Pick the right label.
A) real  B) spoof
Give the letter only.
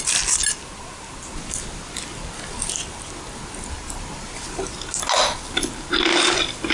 A